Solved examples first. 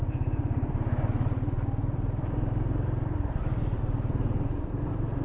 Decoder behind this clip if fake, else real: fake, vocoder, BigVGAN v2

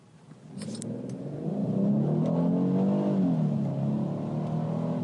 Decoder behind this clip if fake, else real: real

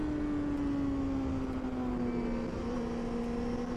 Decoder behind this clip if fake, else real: real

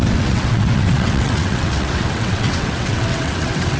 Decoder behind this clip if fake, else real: fake, vocoder, WaveNeXt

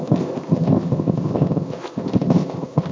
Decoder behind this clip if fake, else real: fake, codec, ZipCodec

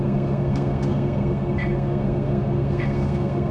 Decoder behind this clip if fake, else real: fake, codec, SNAC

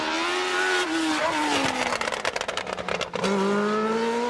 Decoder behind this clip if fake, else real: real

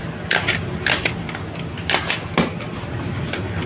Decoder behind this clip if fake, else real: real